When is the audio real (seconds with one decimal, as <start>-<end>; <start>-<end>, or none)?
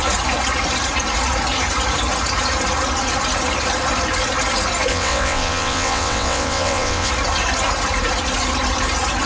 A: 0.0-4.9; 7.1-9.3